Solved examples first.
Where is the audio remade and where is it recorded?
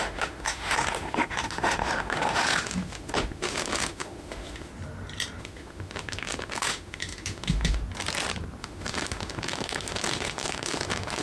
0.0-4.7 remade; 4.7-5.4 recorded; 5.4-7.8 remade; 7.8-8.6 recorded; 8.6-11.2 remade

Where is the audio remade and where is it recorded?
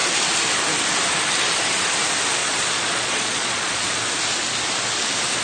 0.0-2.4 recorded; 2.4-4.0 remade; 4.0-5.4 recorded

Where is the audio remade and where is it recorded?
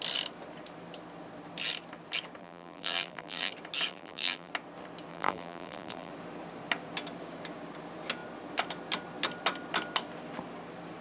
0.0-2.4 recorded; 2.4-3.5 remade; 3.5-3.9 recorded; 3.9-4.5 remade; 4.5-5.1 recorded; 5.1-6.1 remade; 6.1-11.0 recorded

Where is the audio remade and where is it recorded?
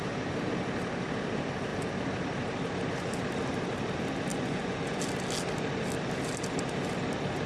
0.0-4.3 recorded; 4.3-5.0 remade; 5.0-7.5 recorded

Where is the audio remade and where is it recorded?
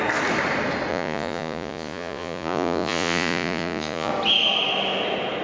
0.0-0.9 recorded; 0.9-4.1 remade; 4.1-5.4 recorded